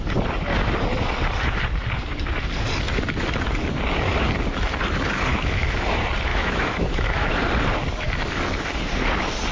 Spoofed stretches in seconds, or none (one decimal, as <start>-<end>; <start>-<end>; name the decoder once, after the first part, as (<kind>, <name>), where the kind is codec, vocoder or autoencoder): 5.3-5.8 (autoencoder, DAC-VAE); 6.3-7.3